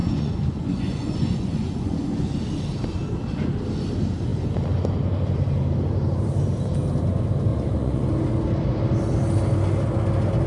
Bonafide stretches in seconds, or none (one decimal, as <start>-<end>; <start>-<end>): 2.4-7.5; 8.1-10.5

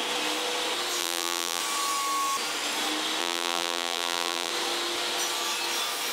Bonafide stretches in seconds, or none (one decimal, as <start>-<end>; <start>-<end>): 0.0-1.0; 1.6-3.2; 4.5-6.1

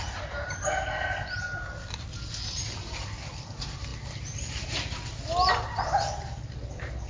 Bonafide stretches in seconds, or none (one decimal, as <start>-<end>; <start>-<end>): 0.0-7.1

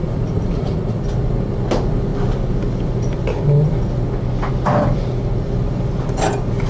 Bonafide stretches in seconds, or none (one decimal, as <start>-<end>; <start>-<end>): 1.0-6.7

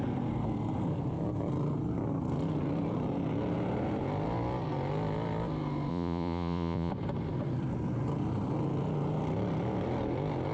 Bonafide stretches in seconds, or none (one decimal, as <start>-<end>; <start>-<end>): 0.0-5.9; 6.9-10.5

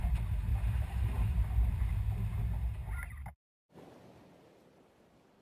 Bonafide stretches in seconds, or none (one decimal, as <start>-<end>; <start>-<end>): 0.0-0.5; 1.9-5.4

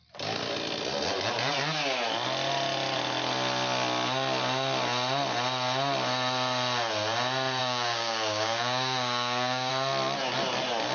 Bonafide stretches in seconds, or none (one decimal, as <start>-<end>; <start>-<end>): 0.0-7.6; 9.7-10.9

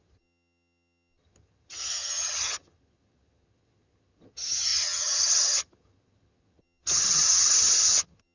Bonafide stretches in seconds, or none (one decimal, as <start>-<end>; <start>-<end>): none